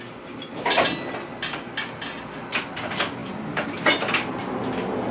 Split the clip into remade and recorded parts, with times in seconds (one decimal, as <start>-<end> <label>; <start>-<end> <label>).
0.0-5.1 recorded